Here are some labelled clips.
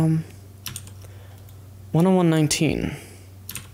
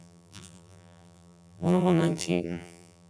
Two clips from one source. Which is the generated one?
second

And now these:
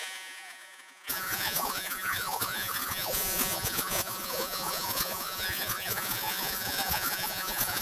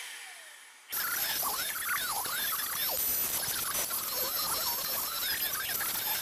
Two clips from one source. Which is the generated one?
first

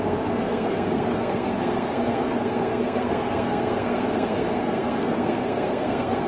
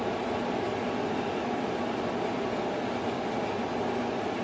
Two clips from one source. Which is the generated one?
first